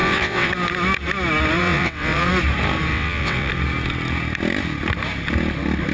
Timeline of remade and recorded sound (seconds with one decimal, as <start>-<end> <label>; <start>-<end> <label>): 0.0-0.5 remade; 0.5-1.6 recorded; 1.6-2.3 remade; 2.3-2.9 recorded; 2.9-3.5 remade; 3.5-5.9 recorded